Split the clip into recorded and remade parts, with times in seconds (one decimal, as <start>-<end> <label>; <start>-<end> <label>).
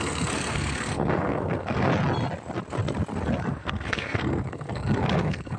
0.0-1.9 remade; 1.9-3.5 recorded; 3.5-5.6 remade